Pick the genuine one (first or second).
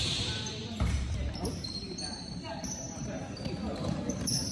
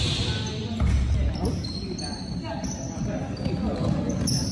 second